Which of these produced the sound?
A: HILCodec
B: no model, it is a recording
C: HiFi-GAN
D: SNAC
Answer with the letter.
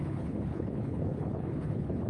A